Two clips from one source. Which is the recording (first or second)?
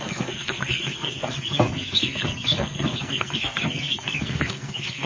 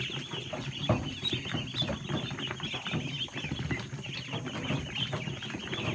second